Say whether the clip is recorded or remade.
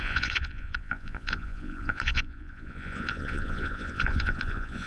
remade